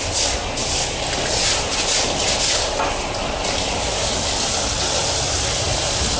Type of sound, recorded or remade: recorded